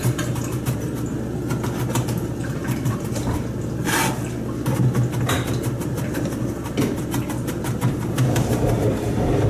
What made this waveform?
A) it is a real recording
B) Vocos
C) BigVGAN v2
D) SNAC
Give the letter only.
A